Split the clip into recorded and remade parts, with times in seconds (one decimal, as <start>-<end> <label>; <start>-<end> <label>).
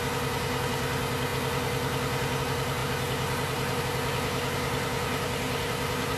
0.0-6.2 recorded